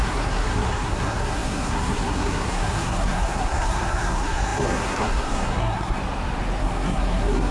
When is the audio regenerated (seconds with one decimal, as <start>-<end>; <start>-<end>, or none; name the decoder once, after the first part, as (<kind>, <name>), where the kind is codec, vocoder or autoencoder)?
0.0-6.0 (codec, SNAC); 6.6-7.5